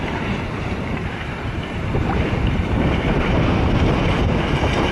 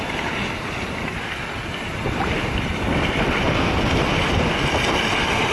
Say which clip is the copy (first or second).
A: first